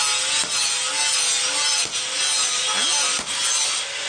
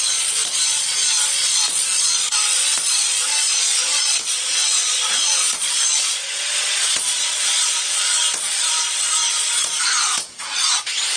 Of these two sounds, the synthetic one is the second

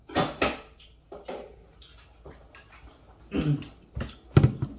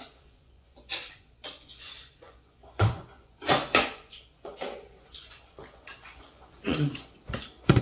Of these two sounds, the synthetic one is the second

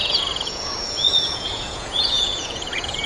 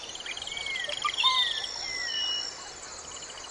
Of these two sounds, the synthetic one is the first